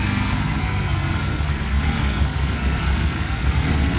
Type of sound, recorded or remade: remade